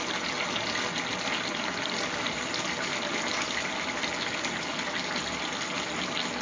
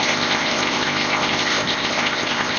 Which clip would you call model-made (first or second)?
second